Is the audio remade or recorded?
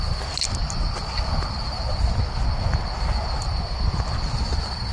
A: recorded